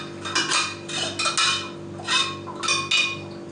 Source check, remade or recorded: recorded